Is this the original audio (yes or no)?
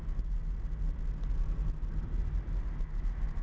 yes